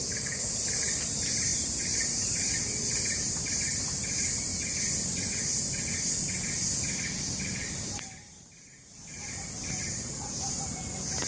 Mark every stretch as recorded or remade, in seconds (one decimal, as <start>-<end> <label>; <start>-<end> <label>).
0.0-4.5 remade; 4.5-8.0 recorded; 8.0-11.3 remade